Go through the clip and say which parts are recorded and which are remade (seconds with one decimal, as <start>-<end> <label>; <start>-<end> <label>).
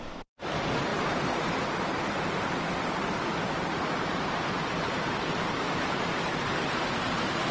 0.0-7.5 recorded